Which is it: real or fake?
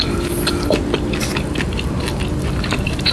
real